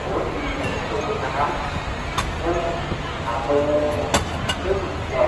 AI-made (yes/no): no